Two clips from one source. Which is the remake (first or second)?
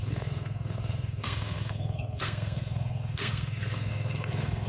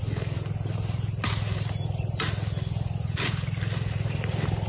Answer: first